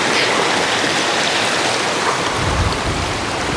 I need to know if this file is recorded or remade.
recorded